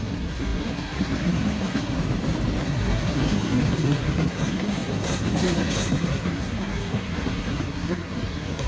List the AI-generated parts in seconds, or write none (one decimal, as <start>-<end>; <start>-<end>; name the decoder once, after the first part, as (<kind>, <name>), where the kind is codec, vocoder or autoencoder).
0.0-2.0 (codec, SNAC); 2.6-8.7